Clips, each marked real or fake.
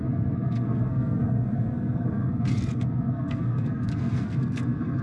fake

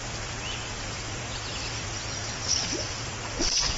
fake